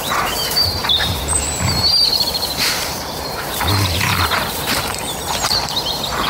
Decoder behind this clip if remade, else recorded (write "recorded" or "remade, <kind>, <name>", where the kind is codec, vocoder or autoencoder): remade, vocoder, BigVGAN v2